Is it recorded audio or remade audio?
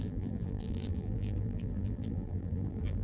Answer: remade